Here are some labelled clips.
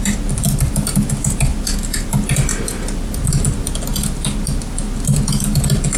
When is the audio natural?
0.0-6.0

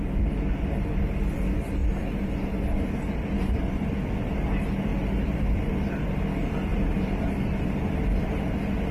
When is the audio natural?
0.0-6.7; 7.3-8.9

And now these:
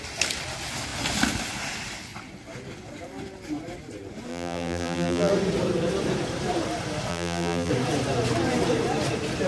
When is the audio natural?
0.0-4.3; 5.3-7.1; 7.7-9.5